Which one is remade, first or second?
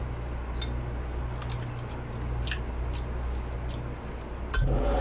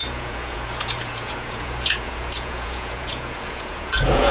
second